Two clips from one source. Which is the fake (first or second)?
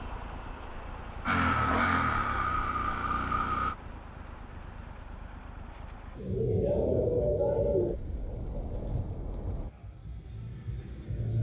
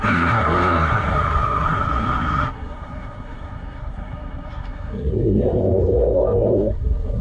second